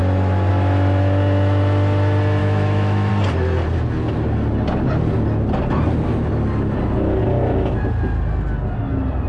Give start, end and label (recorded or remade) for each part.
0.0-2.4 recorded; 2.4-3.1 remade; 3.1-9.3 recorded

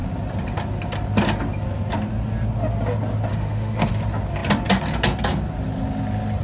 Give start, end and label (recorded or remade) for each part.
0.0-3.3 recorded; 3.3-3.9 remade; 3.9-6.4 recorded

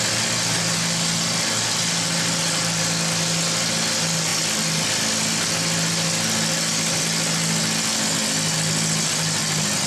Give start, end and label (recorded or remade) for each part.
0.0-9.9 recorded

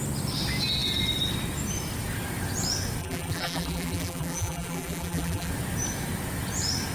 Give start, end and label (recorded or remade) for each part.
0.0-3.0 recorded; 3.0-5.5 remade; 5.5-6.9 recorded

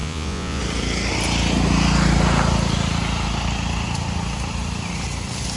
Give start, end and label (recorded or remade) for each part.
0.0-0.6 remade; 0.6-5.6 recorded